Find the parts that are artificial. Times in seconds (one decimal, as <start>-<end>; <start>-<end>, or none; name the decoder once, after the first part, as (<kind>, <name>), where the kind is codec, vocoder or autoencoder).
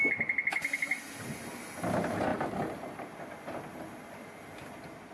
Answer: 2.3-3.1 (vocoder, BigVGAN v2)